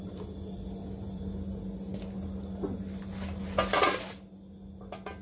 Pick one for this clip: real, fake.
real